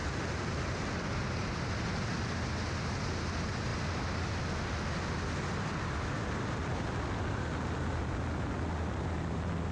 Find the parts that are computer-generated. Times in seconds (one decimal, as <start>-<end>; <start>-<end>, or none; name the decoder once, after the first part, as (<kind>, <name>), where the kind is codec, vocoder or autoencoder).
0.0-2.2 (vocoder, BigVGAN v2)